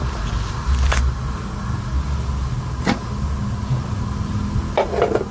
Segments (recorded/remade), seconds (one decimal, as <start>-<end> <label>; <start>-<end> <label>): 0.0-5.3 recorded